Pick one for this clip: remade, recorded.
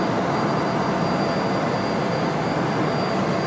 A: recorded